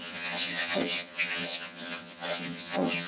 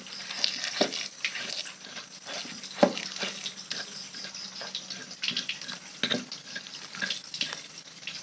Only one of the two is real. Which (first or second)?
second